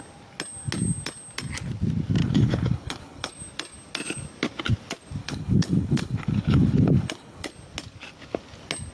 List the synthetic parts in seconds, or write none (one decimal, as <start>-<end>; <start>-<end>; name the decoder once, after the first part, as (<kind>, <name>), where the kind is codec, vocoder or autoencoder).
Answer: 2.2-3.3 (codec, HILCodec); 5.2-7.5